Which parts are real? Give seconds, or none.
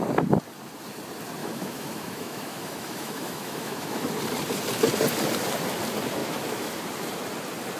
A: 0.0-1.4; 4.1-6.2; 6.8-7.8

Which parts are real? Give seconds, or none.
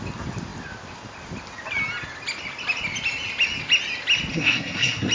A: 0.0-4.3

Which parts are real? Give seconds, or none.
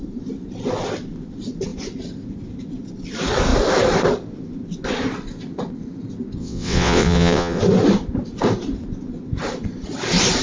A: 0.0-6.4; 7.6-10.4